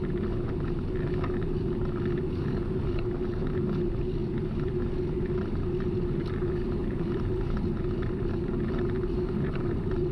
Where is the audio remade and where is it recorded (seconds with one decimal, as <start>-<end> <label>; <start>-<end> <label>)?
0.0-4.2 recorded; 4.2-4.7 remade; 4.7-6.8 recorded; 6.8-8.8 remade; 8.8-10.1 recorded